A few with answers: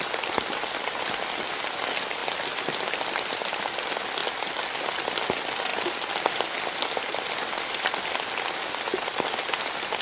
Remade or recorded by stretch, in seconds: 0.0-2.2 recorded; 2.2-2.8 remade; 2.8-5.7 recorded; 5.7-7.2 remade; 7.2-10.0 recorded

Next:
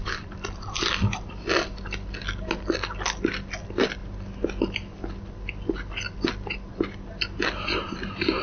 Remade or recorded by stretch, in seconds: 0.0-8.4 recorded

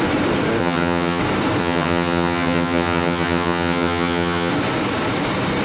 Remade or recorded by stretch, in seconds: 0.0-0.6 recorded; 0.6-1.2 remade; 1.2-1.6 recorded; 1.6-4.5 remade; 4.5-5.6 recorded

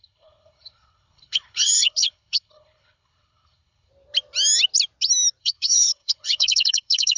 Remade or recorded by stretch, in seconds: 0.0-3.9 remade; 3.9-5.4 recorded; 5.4-7.2 remade

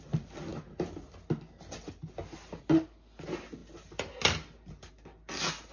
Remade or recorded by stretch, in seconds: 0.0-5.7 recorded

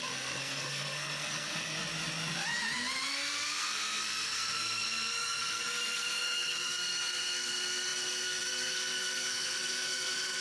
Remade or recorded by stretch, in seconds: 0.0-1.8 remade; 1.8-3.1 recorded; 3.1-10.4 remade